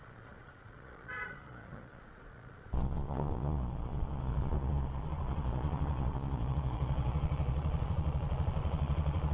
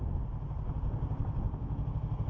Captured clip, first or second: second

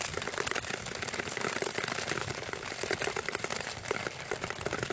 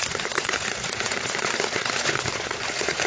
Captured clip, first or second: first